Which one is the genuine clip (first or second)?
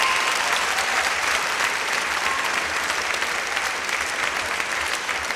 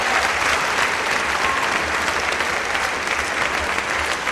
second